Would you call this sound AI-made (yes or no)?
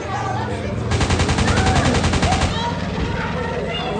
no